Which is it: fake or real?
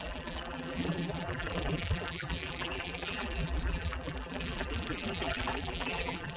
fake